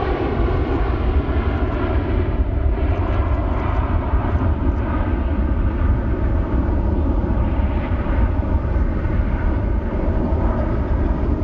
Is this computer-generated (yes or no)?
yes